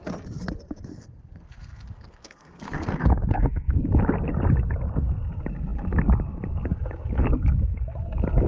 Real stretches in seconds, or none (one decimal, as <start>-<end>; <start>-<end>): 0.0-0.9; 3.8-8.5